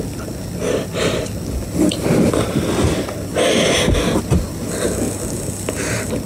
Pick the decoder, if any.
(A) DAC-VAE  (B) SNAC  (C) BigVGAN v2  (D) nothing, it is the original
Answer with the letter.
D